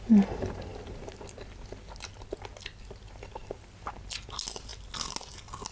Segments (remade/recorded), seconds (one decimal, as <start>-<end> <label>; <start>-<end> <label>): 0.0-5.7 recorded